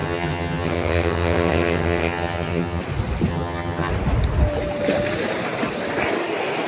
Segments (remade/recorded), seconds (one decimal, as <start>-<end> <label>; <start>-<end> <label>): 0.0-2.8 remade; 2.8-3.3 recorded; 3.3-3.9 remade; 3.9-6.7 recorded